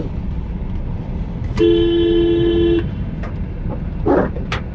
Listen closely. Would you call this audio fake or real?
real